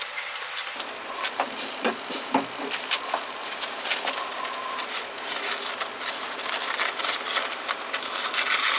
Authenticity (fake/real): real